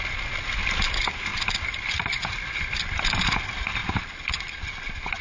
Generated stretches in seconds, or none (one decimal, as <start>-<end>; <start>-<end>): none